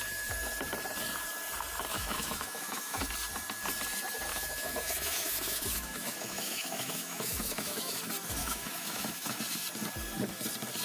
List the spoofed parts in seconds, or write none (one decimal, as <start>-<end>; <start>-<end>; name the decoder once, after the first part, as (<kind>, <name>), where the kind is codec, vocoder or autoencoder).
1.9-3.1 (autoencoder, DAC-VAE); 4.3-8.0; 8.4-9.4